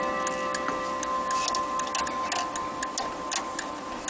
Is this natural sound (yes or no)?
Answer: yes